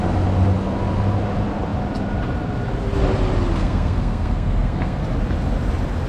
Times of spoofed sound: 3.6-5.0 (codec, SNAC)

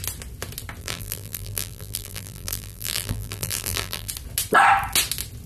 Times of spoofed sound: 0.8-4.1 (vocoder, BigVGAN v2)

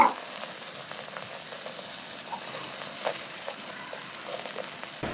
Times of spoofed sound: 3.1-4.0 (vocoder, BigVGAN v2)

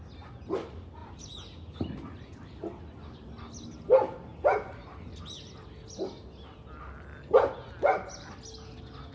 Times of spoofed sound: none

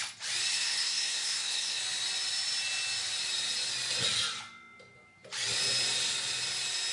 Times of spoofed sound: 0.5-1.8 (codec, SNAC)

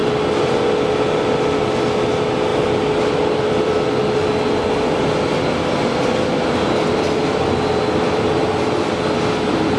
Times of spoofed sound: 2.5-3.7 (vocoder, BigVGAN v2); 4.6-9.8

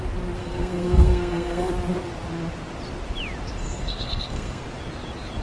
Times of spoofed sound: 0.4-1.7 (codec, SNAC); 3.6-4.6